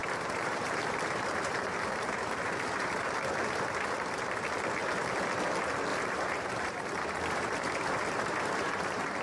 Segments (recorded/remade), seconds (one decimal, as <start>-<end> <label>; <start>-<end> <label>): 0.0-3.3 remade; 3.3-5.9 recorded; 5.9-9.2 remade